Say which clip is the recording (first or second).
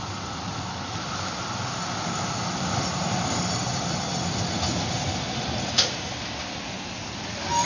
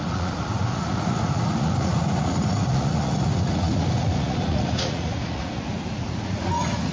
first